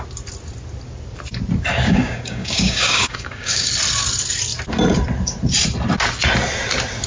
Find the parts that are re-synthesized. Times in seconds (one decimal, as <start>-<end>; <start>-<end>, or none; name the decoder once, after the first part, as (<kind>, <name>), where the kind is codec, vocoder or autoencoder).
1.7-3.7 (codec, DAC)